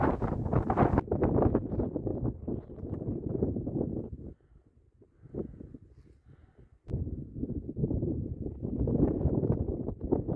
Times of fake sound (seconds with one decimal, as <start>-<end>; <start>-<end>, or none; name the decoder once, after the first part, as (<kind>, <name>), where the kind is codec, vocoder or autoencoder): 2.1-3.6 (vocoder, BigVGAN v2); 7.8-8.4